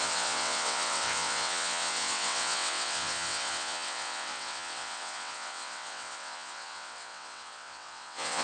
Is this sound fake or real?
fake